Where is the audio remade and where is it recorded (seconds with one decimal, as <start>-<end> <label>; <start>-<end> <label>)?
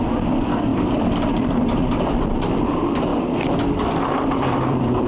0.0-5.1 remade